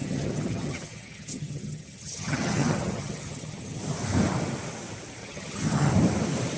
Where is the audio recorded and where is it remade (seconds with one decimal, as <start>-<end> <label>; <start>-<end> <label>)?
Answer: 0.0-3.8 remade; 3.8-5.2 recorded; 5.2-5.9 remade; 5.9-6.6 recorded

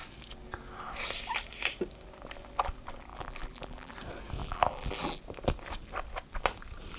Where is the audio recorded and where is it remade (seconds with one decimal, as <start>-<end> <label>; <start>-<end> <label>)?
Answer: 0.0-3.1 recorded; 3.1-3.9 remade; 3.9-4.4 recorded; 4.4-5.2 remade; 5.2-7.0 recorded

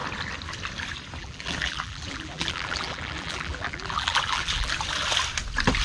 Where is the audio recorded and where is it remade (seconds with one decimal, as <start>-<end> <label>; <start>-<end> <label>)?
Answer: 0.0-1.2 recorded; 1.2-4.7 remade; 4.7-5.8 recorded

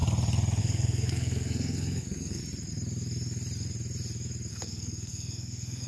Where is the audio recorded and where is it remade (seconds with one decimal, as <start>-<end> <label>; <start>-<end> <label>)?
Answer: 0.0-0.6 recorded; 0.6-2.4 remade; 2.4-4.5 recorded; 4.5-5.9 remade

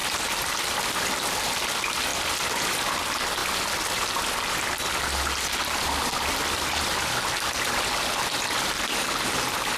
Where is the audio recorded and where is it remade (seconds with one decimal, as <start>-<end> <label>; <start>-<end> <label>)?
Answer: 0.0-0.8 remade; 0.8-2.1 recorded; 2.1-2.9 remade; 2.9-9.8 recorded

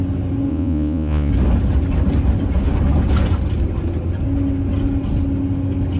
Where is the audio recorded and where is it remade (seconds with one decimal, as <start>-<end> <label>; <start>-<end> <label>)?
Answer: 0.0-0.5 recorded; 0.5-1.3 remade; 1.3-6.0 recorded

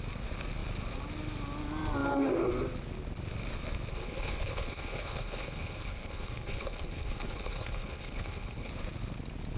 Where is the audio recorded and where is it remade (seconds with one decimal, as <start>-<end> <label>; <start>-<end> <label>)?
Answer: 0.0-3.9 recorded; 3.9-8.7 remade; 8.7-9.6 recorded

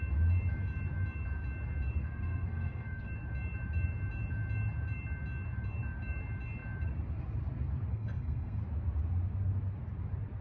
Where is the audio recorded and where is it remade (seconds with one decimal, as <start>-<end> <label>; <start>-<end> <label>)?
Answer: 0.0-2.0 recorded; 2.0-3.1 remade; 3.1-7.9 recorded; 7.9-8.6 remade; 8.6-10.4 recorded